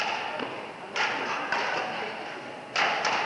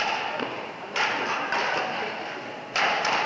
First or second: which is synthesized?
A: second